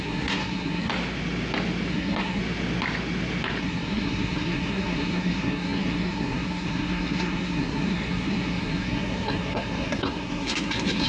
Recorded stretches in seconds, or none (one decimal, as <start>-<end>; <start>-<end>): 0.9-1.9; 2.4-3.6